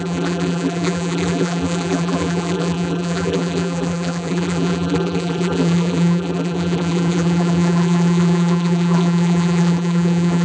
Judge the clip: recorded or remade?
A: remade